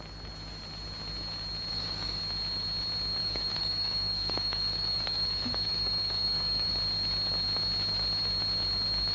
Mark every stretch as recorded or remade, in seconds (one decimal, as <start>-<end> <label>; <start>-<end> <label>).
0.0-1.7 recorded; 1.7-2.2 remade; 2.2-3.2 recorded; 3.2-6.7 remade; 6.7-9.1 recorded